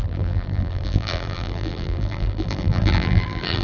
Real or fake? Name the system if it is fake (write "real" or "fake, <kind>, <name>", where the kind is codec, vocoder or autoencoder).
fake, vocoder, BigVGAN v2